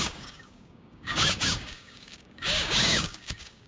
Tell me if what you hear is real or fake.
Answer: fake